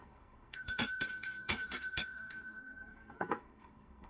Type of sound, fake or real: fake